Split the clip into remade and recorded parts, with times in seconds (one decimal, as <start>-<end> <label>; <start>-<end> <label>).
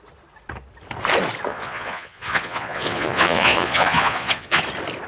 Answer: 0.0-1.5 recorded; 1.5-4.6 remade; 4.6-5.1 recorded